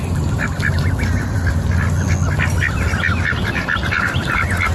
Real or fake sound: real